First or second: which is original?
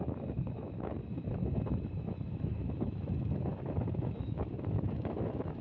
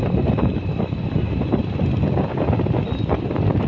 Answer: second